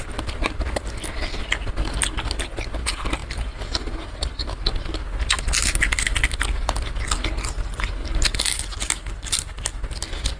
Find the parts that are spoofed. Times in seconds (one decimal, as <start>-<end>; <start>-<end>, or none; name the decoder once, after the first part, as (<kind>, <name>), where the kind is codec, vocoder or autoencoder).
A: none